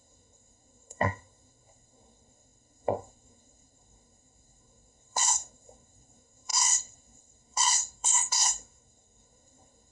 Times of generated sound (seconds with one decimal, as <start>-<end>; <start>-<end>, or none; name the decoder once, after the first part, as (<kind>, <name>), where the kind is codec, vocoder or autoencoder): 0.0-9.9 (codec, SNAC)